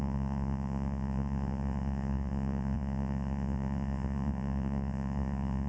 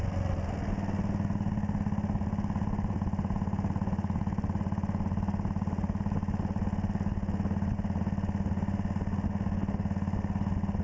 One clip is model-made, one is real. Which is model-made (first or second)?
first